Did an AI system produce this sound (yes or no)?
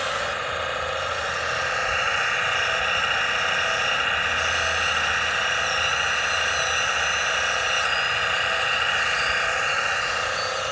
no